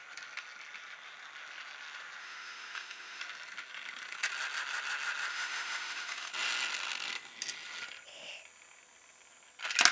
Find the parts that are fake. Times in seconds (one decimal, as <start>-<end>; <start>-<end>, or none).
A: 2.2-3.2; 5.3-6.3